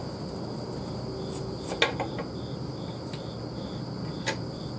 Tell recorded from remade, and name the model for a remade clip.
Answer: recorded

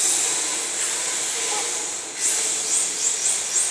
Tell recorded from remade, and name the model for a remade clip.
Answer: recorded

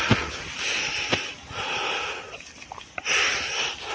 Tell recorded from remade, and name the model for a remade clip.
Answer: recorded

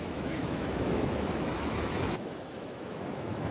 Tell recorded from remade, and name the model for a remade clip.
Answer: remade, autoencoder, DAC-VAE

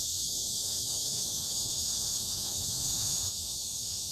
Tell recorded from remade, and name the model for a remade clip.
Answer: remade, autoencoder, DAC-VAE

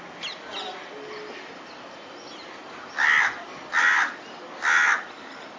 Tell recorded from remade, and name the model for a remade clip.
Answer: recorded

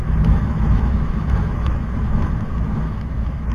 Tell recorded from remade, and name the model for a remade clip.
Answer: remade, autoencoder, DAC-VAE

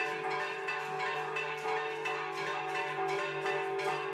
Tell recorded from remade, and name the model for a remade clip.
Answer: recorded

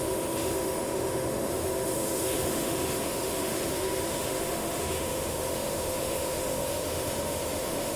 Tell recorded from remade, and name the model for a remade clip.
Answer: remade, autoencoder, DAC-VAE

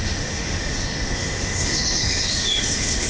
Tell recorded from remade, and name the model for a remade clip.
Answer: remade, autoencoder, DAC-VAE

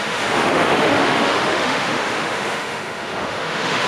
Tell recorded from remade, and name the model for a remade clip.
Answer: remade, autoencoder, DAC-VAE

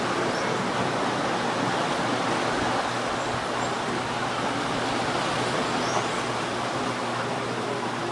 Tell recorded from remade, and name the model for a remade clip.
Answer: recorded